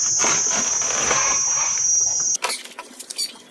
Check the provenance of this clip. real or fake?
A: real